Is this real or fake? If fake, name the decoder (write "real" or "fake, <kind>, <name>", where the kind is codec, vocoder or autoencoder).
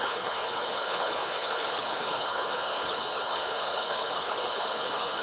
fake, codec, HILCodec